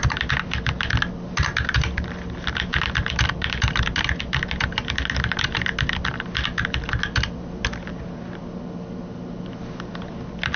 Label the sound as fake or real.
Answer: real